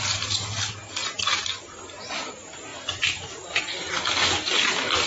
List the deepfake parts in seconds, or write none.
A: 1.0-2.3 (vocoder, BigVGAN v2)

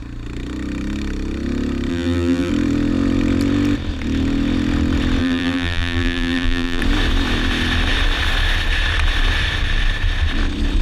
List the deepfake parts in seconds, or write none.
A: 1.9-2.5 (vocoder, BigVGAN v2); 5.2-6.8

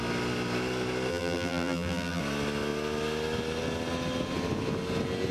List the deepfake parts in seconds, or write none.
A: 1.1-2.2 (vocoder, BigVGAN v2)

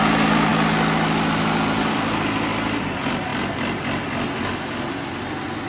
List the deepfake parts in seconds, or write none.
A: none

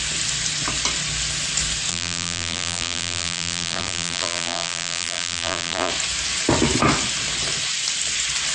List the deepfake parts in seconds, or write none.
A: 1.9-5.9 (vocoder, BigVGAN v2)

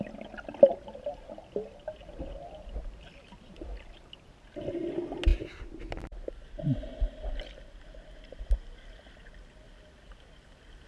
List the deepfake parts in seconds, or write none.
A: none

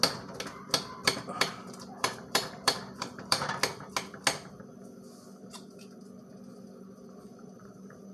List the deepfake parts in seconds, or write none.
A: 1.0-3.5 (vocoder, BigVGAN v2); 7.4-8.1